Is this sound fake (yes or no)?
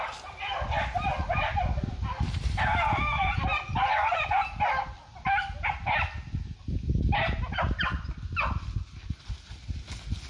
no